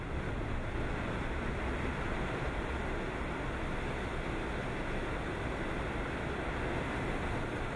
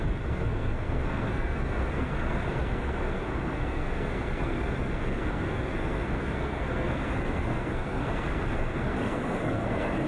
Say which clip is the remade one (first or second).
second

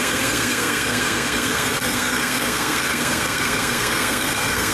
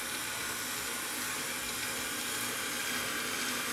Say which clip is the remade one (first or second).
first